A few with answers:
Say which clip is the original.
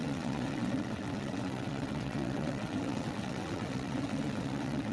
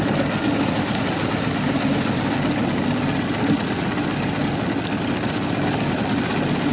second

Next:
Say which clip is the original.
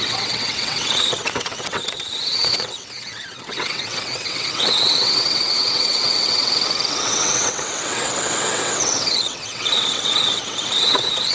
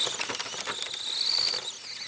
second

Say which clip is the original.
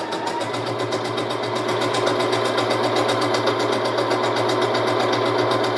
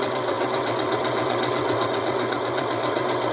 first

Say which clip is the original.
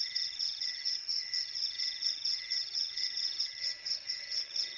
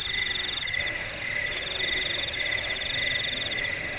second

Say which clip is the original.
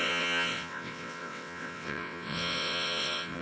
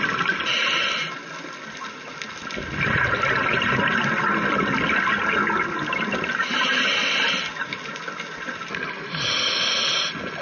second